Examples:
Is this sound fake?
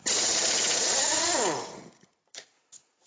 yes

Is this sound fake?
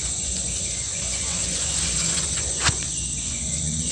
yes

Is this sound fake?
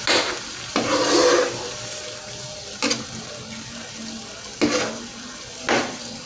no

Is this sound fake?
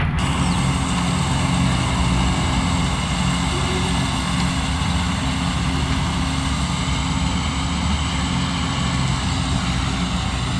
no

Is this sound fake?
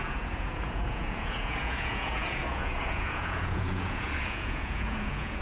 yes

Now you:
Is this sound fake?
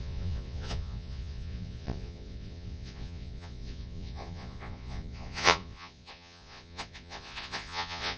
yes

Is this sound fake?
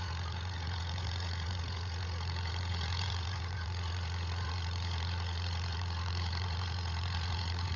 yes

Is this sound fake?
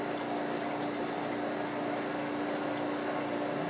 no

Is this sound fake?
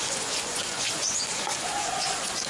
yes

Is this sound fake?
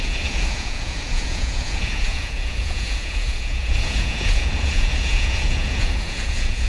yes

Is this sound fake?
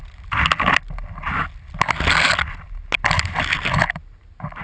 no